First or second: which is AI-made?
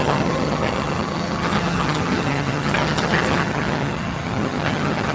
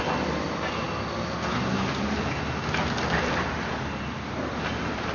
first